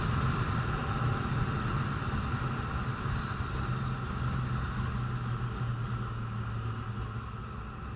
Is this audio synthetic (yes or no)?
no